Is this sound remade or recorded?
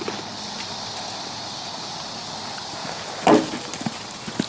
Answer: recorded